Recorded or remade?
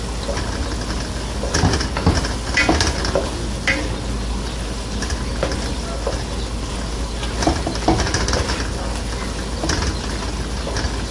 recorded